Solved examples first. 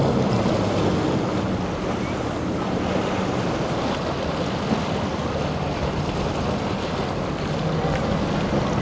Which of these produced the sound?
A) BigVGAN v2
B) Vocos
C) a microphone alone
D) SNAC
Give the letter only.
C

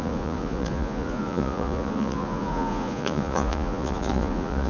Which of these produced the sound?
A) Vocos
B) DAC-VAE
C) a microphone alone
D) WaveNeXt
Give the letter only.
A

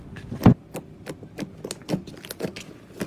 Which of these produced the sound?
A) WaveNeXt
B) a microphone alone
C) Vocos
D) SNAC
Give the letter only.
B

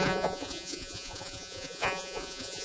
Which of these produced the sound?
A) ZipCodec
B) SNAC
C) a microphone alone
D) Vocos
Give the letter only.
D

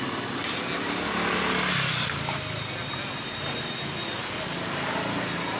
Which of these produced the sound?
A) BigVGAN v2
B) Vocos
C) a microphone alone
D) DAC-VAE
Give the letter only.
C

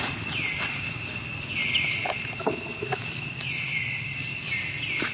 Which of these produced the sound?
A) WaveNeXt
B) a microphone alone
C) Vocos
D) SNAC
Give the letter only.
B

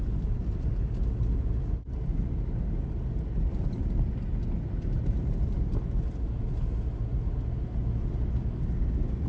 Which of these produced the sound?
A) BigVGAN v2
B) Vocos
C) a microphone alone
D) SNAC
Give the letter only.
C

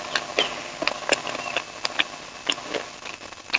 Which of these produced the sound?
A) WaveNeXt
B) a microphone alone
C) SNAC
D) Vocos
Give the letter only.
B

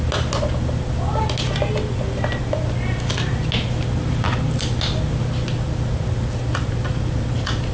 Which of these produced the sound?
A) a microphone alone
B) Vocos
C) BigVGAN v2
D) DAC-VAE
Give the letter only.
A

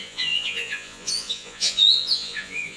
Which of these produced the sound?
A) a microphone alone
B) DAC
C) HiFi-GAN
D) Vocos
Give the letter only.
D